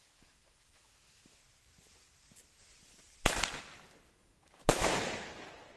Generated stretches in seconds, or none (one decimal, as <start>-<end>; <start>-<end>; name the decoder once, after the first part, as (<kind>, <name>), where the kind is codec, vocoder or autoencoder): 0.0-1.4 (autoencoder, DAC-VAE); 4.1-4.8